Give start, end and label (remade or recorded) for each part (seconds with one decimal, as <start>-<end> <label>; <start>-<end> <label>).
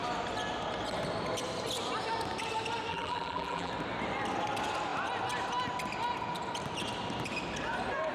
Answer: 0.0-2.9 recorded; 2.9-3.7 remade; 3.7-8.1 recorded